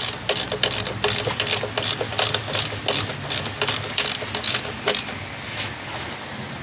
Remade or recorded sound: recorded